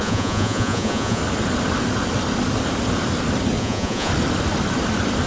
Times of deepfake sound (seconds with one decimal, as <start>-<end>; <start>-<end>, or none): 0.0-1.2; 3.6-4.1